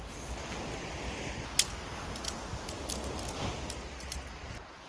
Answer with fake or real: real